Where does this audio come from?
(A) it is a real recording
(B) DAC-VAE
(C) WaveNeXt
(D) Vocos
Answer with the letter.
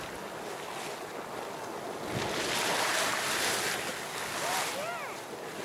A